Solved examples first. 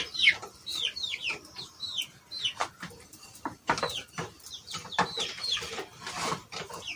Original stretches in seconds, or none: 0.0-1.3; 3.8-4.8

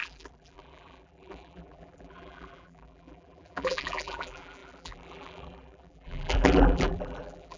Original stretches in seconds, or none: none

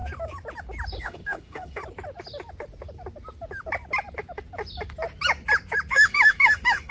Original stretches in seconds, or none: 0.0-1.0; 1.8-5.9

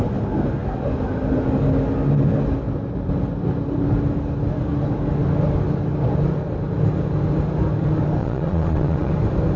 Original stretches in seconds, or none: 0.0-8.2; 9.1-9.6

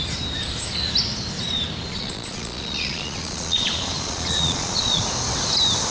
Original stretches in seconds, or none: 0.0-1.9; 5.0-5.9

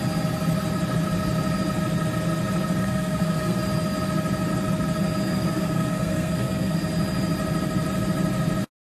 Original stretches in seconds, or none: 0.0-2.8; 3.6-5.3; 6.8-9.0

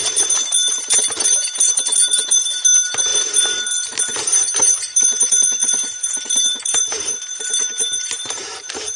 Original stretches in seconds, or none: 3.1-4.0; 5.6-6.2

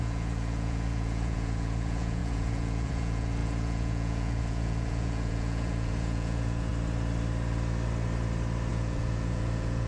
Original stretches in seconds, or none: 6.7-8.7